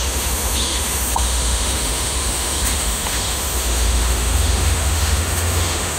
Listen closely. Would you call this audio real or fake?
fake